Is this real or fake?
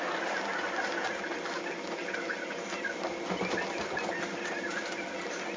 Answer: real